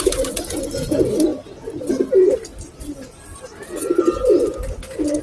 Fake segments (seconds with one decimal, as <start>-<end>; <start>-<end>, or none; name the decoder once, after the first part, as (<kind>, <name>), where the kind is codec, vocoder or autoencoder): none